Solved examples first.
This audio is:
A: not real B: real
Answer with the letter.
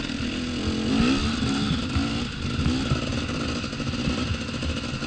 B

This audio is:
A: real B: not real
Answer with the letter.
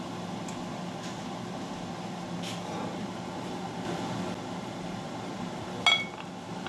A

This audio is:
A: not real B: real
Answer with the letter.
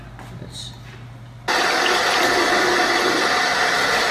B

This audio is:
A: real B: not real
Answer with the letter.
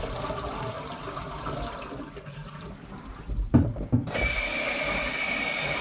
B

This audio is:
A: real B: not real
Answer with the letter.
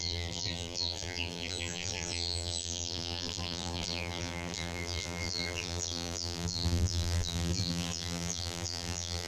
B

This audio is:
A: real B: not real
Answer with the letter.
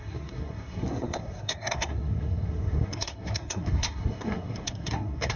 B